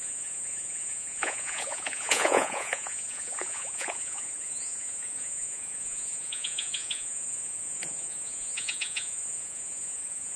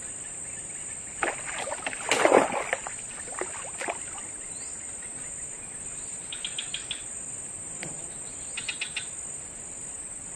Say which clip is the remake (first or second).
first